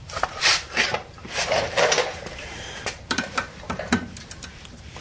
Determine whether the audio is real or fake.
fake